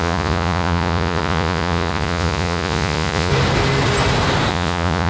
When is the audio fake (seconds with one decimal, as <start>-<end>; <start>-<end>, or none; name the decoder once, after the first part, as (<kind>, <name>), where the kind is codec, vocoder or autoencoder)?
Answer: 0.0-3.3 (vocoder, Vocos); 4.5-5.1